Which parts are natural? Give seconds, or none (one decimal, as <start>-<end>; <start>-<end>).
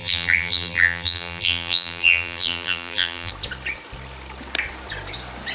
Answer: 3.3-5.5